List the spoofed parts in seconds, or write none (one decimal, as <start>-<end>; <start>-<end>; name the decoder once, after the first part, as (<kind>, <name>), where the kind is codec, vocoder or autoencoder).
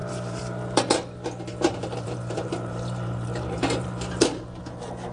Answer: 0.0-0.8 (vocoder, BigVGAN v2); 1.5-4.6